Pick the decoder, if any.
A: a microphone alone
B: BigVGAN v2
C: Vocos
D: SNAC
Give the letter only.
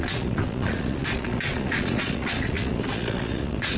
C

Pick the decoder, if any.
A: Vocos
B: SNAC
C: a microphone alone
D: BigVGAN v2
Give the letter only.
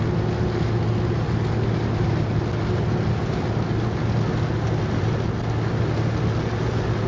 C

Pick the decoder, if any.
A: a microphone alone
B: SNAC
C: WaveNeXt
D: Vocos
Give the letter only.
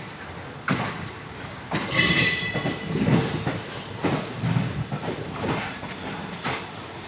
A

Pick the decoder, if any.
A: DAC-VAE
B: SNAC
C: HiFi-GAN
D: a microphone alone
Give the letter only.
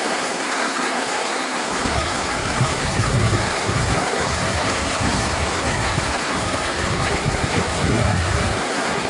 B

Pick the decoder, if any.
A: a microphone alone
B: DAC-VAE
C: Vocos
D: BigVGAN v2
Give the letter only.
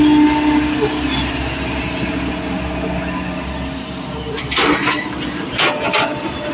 A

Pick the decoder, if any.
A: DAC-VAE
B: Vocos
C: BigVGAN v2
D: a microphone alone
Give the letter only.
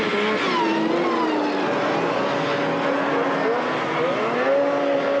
D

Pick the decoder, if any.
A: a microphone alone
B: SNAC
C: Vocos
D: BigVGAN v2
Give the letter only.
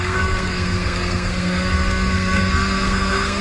B